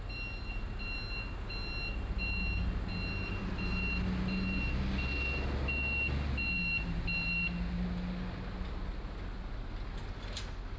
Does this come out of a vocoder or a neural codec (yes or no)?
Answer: no